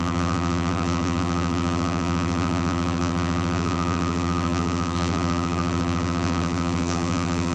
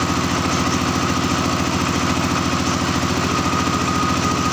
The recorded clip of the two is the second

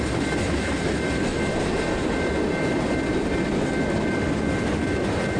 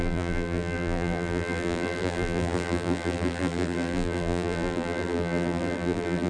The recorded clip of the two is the first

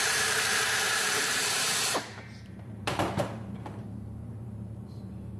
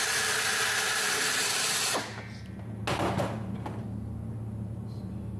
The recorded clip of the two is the second